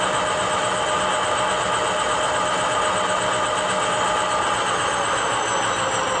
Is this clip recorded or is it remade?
recorded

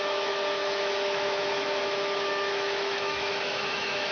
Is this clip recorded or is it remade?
remade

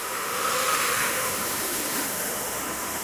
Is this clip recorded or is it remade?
remade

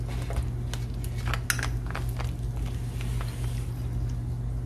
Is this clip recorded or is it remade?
recorded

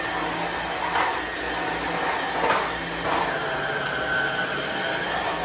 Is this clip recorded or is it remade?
recorded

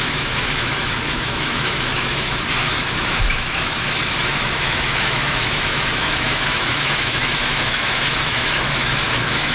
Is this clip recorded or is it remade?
remade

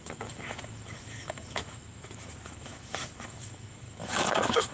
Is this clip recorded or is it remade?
remade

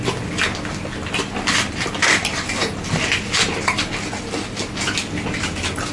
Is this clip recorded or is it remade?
recorded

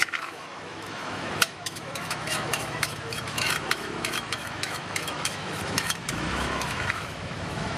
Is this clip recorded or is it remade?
remade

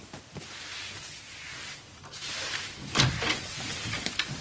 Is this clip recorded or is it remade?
recorded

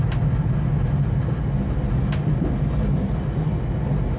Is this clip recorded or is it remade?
recorded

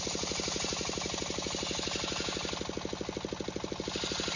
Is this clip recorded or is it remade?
recorded